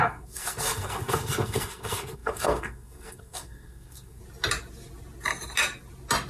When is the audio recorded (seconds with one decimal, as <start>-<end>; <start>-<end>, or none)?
4.2-6.3